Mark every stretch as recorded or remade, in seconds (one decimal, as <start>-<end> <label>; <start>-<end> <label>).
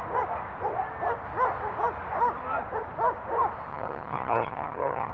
0.0-3.7 recorded; 3.7-5.1 remade